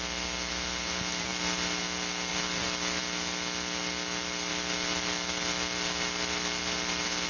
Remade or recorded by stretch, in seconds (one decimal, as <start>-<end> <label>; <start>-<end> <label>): 0.0-1.3 recorded; 1.3-1.8 remade; 1.8-2.3 recorded; 2.3-3.0 remade; 3.0-4.5 recorded; 4.5-7.3 remade